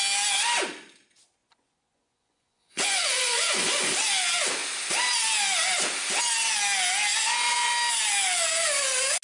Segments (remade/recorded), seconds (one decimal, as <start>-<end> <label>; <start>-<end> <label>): 0.0-1.4 recorded; 1.4-3.9 remade; 3.9-7.1 recorded; 7.1-7.7 remade; 7.7-9.2 recorded